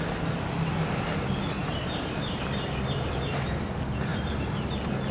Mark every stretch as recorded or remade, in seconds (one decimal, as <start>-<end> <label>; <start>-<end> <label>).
0.0-1.6 recorded; 1.6-3.6 remade; 3.6-4.1 recorded; 4.1-4.6 remade; 4.6-5.1 recorded